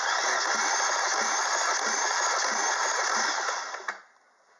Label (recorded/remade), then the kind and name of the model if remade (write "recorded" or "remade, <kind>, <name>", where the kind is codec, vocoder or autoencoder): recorded